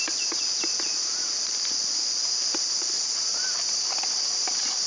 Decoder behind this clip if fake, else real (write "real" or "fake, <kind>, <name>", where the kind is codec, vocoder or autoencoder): real